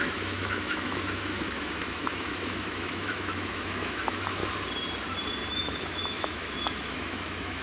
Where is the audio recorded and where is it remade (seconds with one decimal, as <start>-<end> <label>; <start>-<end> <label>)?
0.0-4.4 remade; 4.4-5.5 recorded; 5.5-7.6 remade